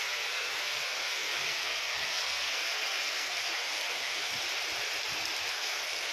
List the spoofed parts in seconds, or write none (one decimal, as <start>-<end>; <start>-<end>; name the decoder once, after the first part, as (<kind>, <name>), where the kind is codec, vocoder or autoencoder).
0.0-4.3 (codec, SNAC); 5.5-6.1